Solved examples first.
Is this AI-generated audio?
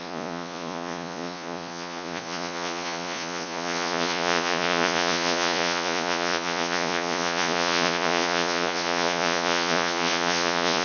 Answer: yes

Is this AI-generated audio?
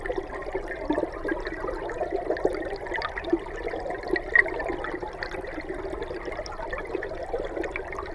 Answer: no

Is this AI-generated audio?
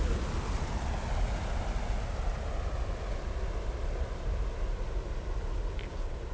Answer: no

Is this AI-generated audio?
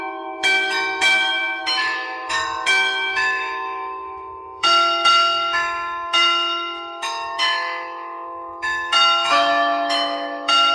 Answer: yes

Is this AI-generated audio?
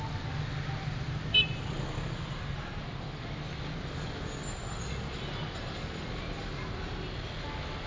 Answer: no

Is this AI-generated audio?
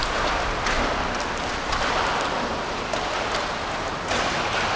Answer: no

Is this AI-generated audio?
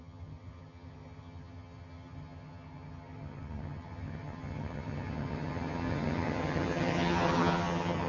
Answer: yes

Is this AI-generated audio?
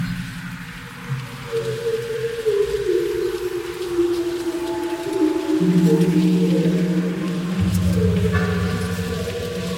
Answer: no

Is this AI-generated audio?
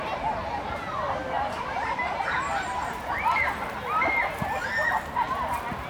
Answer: no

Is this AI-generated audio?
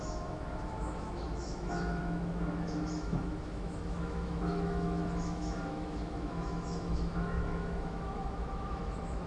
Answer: yes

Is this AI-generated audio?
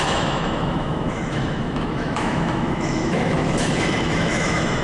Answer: yes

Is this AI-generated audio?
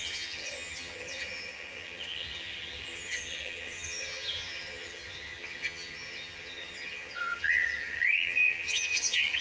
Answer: yes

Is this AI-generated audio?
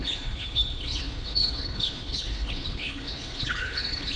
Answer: yes